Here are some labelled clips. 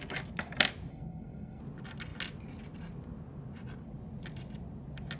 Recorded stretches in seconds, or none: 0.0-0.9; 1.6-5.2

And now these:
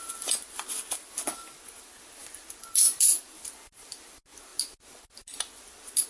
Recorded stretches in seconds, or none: 0.0-6.1

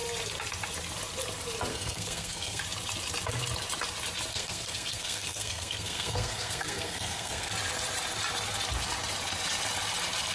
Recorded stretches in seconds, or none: 0.0-1.7; 2.6-4.3; 7.5-10.3

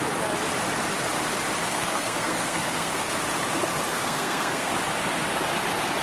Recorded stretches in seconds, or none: 0.0-1.7; 3.1-3.9; 4.7-6.0

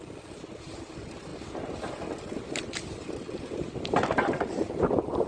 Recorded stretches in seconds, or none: 0.0-5.3